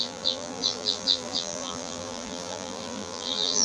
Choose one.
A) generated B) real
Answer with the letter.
A